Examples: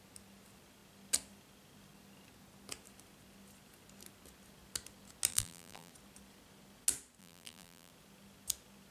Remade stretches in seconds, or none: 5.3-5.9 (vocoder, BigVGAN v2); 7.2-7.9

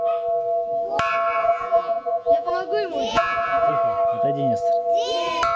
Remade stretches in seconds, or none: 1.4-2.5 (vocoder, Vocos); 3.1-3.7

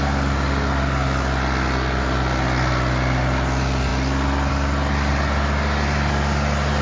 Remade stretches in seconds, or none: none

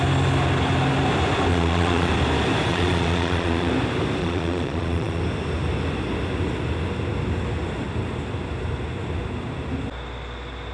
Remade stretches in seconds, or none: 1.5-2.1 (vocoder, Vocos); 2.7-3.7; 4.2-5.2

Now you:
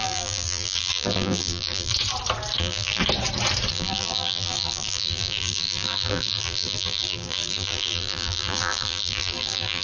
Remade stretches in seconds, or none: 0.0-1.9 (vocoder, BigVGAN v2); 2.6-3.0; 3.7-9.8

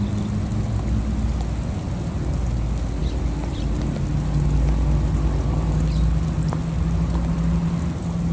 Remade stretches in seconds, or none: none

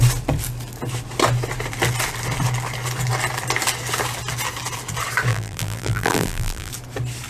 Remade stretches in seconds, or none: 5.3-6.7 (vocoder, BigVGAN v2)

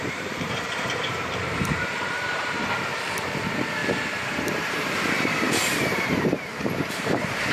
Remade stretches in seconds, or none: 0.0-7.5 (vocoder, BigVGAN v2)